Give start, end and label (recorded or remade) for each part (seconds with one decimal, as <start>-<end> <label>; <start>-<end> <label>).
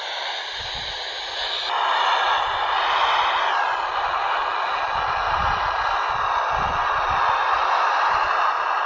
0.0-4.5 remade; 4.5-5.3 recorded; 5.3-8.9 remade